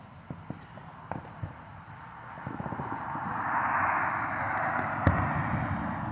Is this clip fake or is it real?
real